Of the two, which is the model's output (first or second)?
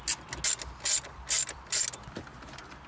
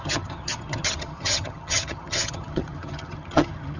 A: second